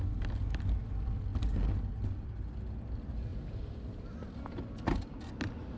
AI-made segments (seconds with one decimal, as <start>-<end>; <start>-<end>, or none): none